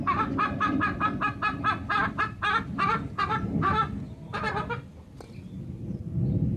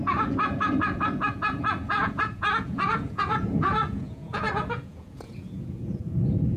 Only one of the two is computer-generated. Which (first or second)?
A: second